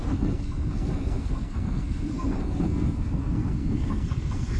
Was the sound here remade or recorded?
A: remade